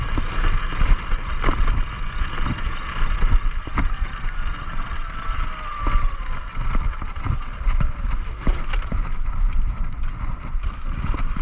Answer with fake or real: real